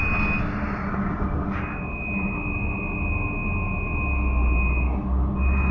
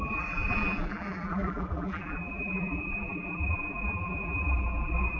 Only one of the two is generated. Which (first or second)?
second